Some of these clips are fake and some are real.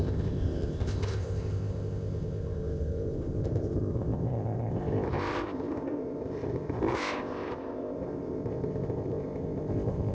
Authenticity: fake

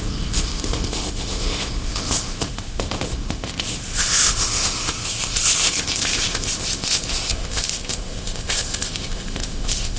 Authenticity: fake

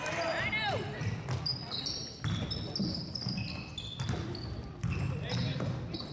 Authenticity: real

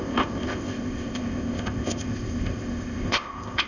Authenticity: fake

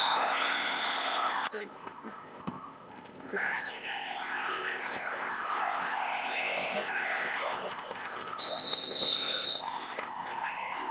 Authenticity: fake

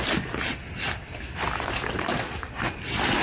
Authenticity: real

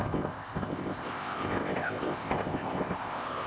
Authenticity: fake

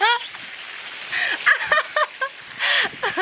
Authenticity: real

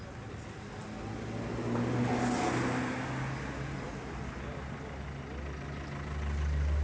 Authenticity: real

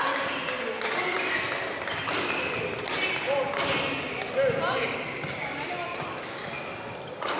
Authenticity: real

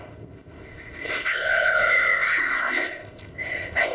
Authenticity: fake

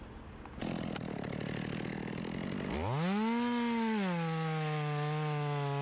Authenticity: real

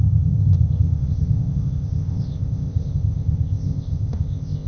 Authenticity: fake